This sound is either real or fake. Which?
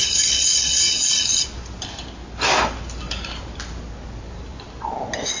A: real